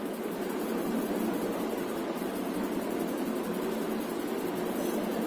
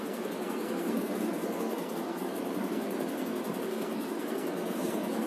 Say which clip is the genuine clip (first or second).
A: first